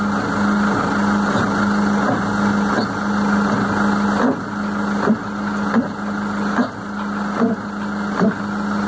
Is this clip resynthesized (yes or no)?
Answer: no